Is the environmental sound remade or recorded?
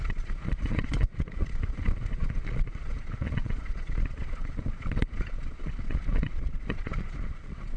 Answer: remade